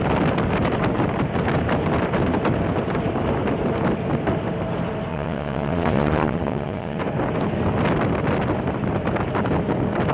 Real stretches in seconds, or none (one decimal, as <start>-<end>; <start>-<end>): 0.0-5.1; 7.0-10.1